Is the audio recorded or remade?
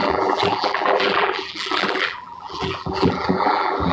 remade